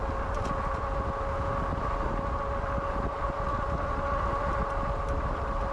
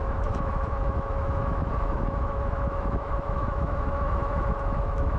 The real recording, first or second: first